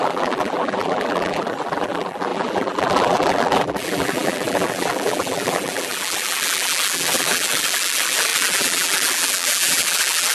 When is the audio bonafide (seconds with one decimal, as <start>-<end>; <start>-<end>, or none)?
none